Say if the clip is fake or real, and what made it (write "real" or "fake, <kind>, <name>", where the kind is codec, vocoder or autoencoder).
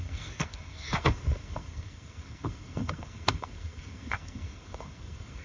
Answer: fake, codec, SNAC